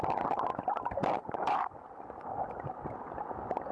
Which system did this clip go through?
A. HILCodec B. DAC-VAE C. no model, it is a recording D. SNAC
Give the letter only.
C